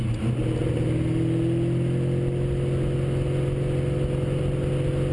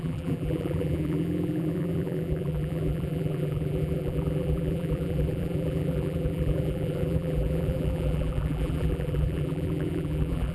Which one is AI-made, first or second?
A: second